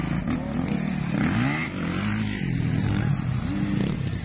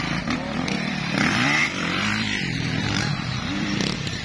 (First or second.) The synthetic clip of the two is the second